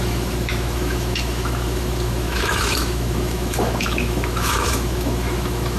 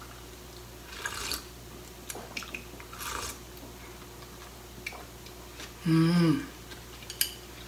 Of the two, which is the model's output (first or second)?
first